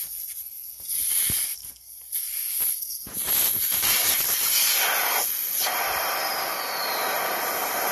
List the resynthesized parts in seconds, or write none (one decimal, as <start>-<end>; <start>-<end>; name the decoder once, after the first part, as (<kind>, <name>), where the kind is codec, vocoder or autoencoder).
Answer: 0.0-1.6 (vocoder, BigVGAN v2); 2.8-7.9